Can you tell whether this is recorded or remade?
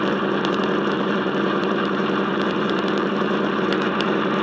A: remade